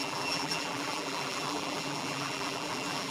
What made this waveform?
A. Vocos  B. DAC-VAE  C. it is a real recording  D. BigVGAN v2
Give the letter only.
D